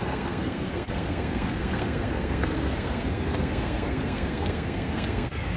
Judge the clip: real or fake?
fake